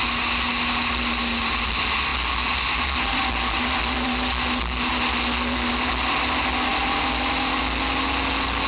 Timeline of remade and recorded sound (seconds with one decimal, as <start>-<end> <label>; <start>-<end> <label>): 0.0-8.7 recorded